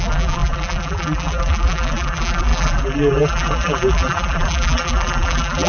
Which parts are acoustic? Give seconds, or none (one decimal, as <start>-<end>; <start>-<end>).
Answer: none